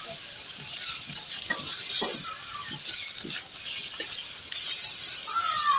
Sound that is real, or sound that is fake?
real